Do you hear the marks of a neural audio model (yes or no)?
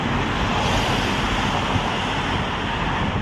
no